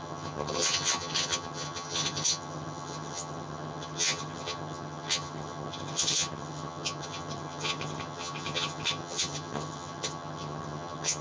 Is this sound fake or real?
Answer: fake